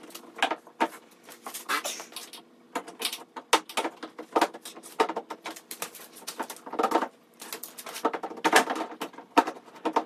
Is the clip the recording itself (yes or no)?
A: yes